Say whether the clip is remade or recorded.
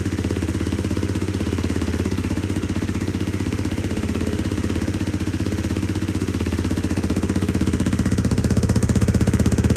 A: remade